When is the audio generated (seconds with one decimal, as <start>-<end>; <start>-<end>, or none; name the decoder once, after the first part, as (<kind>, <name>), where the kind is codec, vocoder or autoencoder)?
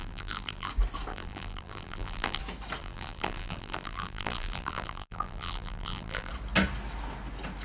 0.0-0.7 (vocoder, BigVGAN v2); 1.1-2.4; 2.8-6.3